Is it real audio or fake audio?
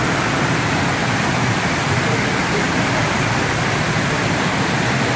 fake